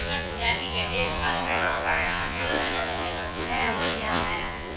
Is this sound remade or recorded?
remade